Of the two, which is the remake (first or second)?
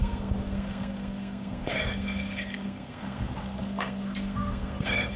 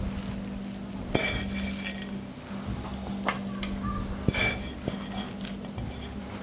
first